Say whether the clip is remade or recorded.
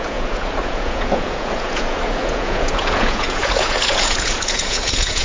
remade